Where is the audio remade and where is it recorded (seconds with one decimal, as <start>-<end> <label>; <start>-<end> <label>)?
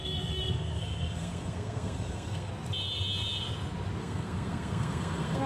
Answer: 0.0-2.5 remade; 2.5-4.0 recorded; 4.0-5.5 remade